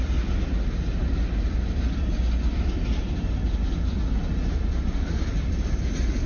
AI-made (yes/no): no